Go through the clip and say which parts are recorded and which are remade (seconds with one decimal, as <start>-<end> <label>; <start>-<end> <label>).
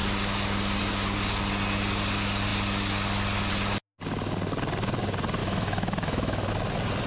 0.0-5.4 recorded; 5.4-6.5 remade; 6.5-7.1 recorded